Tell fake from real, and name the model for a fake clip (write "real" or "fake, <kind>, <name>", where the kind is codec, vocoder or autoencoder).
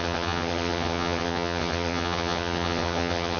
fake, vocoder, HiFi-GAN